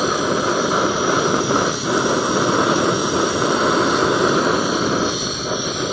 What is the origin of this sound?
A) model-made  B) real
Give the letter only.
B